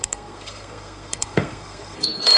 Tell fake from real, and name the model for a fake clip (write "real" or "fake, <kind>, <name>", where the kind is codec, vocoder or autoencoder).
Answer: fake, codec, SNAC